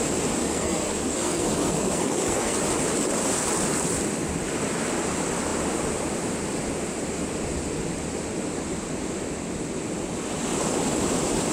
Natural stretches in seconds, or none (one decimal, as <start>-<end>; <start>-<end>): 0.0-0.4; 2.6-11.5